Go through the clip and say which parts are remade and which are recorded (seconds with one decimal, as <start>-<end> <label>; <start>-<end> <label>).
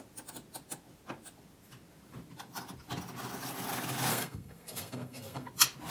0.0-4.1 recorded; 4.1-5.5 remade; 5.5-5.9 recorded